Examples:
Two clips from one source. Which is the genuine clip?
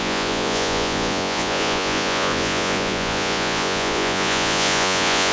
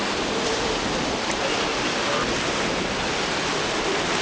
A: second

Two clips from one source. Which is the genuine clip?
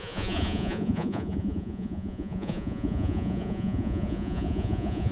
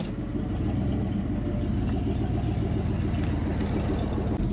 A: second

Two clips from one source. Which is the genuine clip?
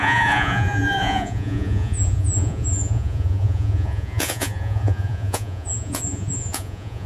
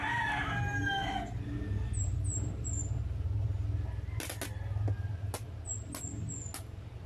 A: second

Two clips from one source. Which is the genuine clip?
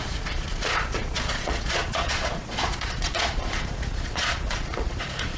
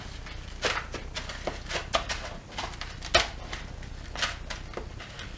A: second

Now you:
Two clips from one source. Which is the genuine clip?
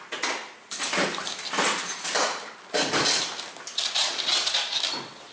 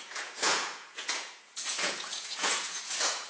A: first